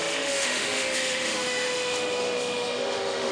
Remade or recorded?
remade